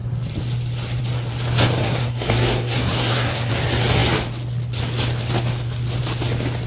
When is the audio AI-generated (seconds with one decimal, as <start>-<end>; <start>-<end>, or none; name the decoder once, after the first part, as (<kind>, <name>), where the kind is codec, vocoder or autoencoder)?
1.8-3.5 (codec, SNAC)